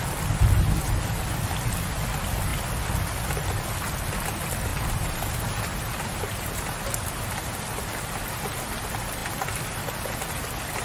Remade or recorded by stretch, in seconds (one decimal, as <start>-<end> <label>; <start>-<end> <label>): 0.0-4.7 recorded; 4.7-7.1 remade; 7.1-10.8 recorded